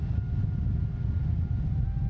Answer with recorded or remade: recorded